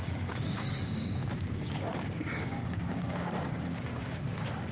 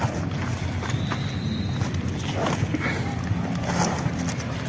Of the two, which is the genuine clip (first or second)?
second